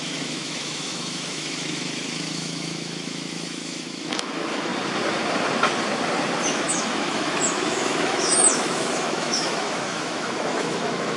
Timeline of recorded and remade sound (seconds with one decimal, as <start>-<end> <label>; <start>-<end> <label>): 0.0-4.7 remade; 4.7-6.5 recorded; 6.5-11.2 remade